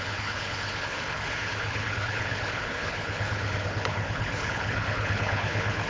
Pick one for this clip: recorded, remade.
remade